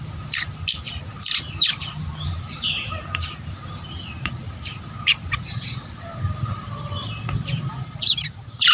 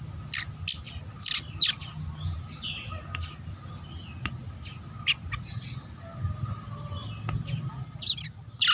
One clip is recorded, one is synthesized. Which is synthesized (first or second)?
first